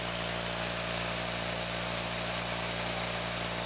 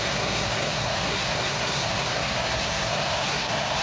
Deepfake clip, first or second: second